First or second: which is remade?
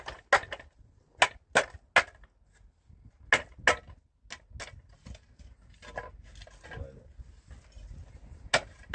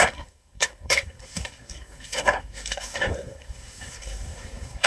second